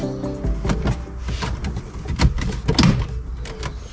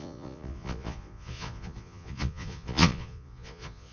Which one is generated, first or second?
second